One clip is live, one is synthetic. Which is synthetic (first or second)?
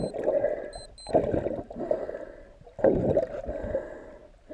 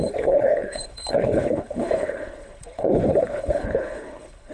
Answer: second